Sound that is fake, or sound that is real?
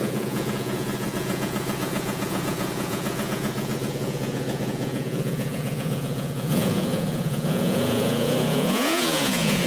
fake